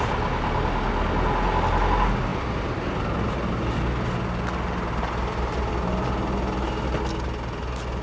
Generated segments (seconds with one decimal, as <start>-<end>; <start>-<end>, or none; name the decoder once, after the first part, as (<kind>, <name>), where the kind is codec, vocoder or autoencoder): none